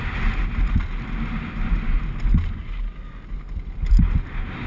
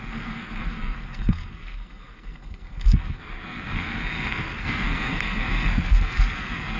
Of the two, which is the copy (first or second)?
second